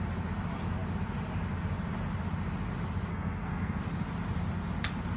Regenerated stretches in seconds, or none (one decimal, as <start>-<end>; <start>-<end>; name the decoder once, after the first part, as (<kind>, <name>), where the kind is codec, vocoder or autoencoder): 3.1-3.8 (codec, SNAC)